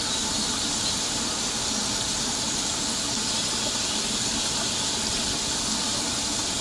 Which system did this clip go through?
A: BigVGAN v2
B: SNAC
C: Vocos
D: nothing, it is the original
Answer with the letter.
D